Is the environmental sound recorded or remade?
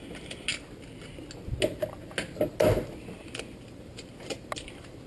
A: recorded